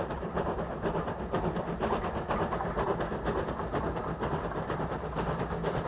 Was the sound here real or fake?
real